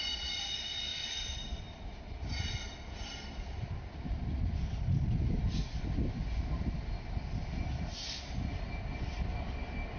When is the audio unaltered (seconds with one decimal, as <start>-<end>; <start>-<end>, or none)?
0.0-10.0